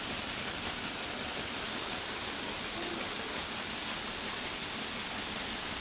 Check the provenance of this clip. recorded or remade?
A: recorded